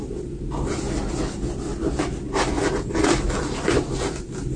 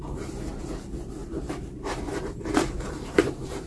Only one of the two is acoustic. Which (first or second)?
first